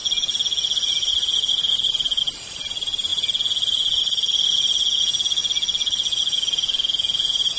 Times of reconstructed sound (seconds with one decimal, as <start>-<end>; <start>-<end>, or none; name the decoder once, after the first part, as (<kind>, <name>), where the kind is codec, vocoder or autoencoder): none